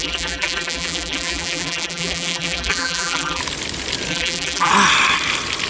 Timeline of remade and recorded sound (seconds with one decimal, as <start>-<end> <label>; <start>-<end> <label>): 0.0-3.4 remade; 3.4-4.1 recorded; 4.1-4.7 remade; 4.7-5.7 recorded